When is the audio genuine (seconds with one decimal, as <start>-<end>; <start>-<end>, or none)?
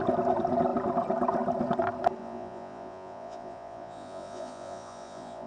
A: 0.0-2.2